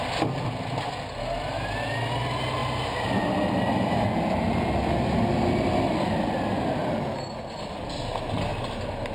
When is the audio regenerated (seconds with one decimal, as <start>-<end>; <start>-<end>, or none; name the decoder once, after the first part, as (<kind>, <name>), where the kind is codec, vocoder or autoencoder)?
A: 2.6-4.5 (vocoder, BigVGAN v2); 6.8-7.8